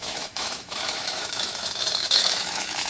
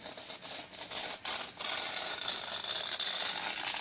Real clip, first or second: second